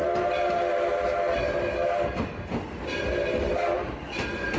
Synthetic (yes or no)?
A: no